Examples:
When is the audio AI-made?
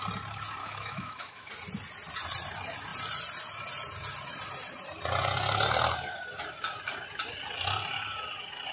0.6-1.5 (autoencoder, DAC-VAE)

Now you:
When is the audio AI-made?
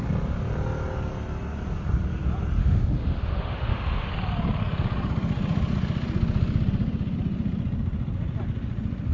2.6-4.1 (autoencoder, DAC-VAE)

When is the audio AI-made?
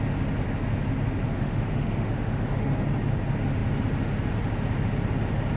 1.3-2.7 (autoencoder, DAC-VAE)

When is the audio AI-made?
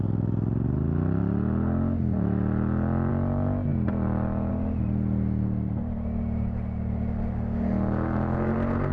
none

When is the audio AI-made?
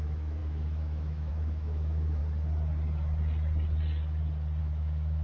0.0-2.2 (autoencoder, DAC-VAE); 4.6-5.2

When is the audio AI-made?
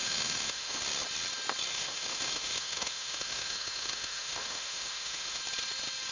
0.0-0.8 (autoencoder, DAC-VAE); 1.7-5.4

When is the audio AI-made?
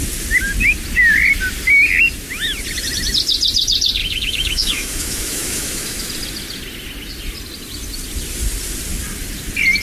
4.0-6.1 (autoencoder, DAC-VAE)